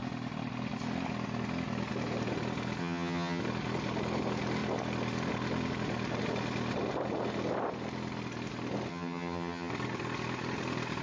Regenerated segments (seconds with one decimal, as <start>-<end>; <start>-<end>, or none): 2.8-3.4; 8.9-9.7